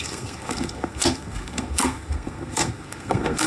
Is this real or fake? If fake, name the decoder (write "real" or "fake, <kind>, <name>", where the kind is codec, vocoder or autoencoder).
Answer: fake, codec, SNAC